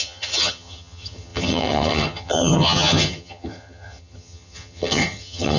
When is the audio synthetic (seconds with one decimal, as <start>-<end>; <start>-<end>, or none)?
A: 0.0-5.6